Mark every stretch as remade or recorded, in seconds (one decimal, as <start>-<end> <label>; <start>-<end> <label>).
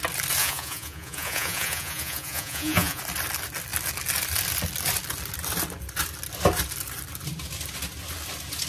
0.0-0.4 recorded; 0.4-3.0 remade; 3.0-8.7 recorded